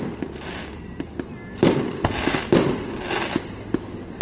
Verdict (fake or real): real